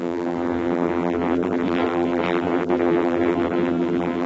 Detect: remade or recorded remade